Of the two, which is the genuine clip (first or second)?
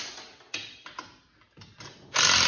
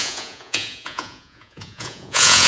first